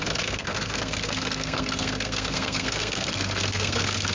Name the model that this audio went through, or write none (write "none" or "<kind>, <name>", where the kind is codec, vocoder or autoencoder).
codec, SNAC